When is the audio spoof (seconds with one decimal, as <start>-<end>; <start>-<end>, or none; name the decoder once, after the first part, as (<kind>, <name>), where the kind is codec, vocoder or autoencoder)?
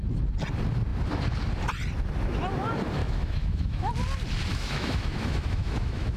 3.0-3.9 (autoencoder, DAC-VAE); 4.5-6.2